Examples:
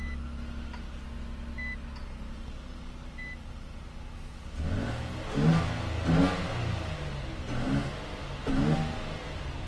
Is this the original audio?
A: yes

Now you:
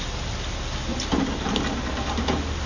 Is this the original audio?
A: yes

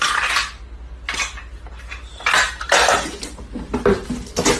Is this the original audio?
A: yes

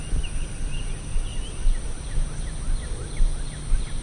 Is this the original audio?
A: yes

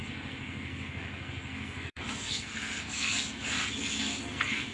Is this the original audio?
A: no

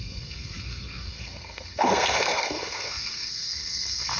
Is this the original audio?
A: no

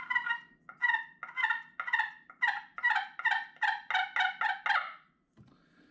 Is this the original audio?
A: yes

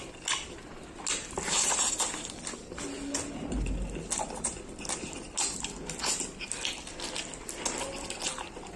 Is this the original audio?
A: yes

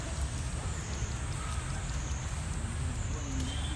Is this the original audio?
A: yes